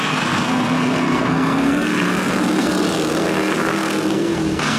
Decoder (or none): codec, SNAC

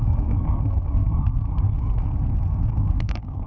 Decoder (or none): codec, SNAC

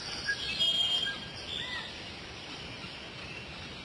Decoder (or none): none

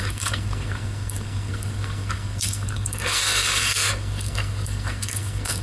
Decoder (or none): codec, SNAC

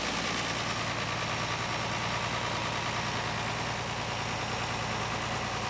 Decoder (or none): none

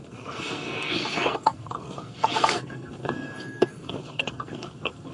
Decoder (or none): codec, SNAC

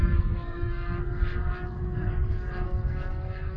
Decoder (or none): codec, SNAC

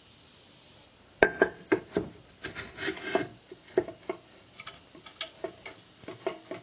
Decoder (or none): none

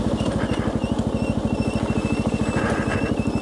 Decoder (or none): none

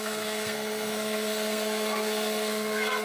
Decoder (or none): codec, SNAC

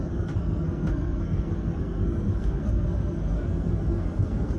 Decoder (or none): codec, SNAC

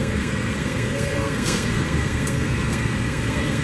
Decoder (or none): codec, SNAC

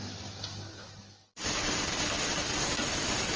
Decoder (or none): none